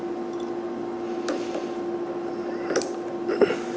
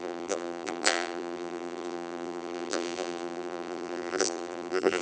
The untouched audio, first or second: first